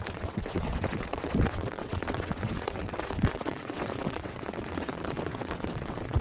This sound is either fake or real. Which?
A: fake